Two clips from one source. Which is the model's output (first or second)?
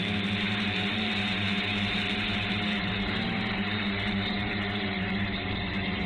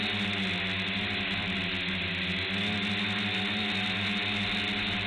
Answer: first